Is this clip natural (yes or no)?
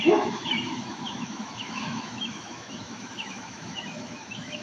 no